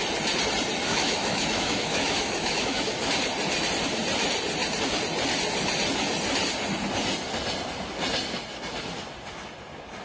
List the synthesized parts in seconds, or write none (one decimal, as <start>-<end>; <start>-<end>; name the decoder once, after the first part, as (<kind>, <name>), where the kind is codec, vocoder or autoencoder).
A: 0.9-3.1 (autoencoder, DAC-VAE)